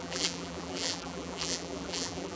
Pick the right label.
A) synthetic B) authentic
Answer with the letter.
A